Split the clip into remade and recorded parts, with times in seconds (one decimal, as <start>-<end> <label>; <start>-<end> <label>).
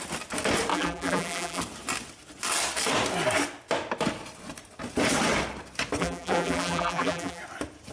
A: 0.0-0.7 recorded; 0.7-1.6 remade; 1.6-6.0 recorded; 6.0-7.4 remade; 7.4-7.9 recorded